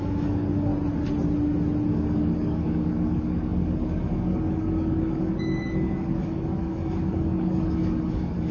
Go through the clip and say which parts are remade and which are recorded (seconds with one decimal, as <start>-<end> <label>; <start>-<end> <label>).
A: 0.0-0.7 remade; 0.7-1.9 recorded; 1.9-8.5 remade